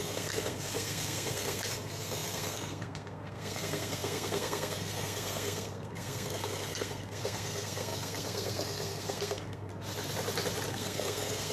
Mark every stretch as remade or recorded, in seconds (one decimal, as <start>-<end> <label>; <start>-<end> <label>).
0.0-9.7 remade; 9.7-10.7 recorded; 10.7-11.5 remade